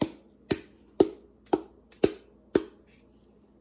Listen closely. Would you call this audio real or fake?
real